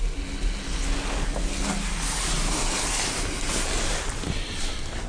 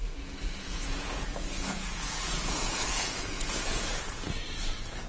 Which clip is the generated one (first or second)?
second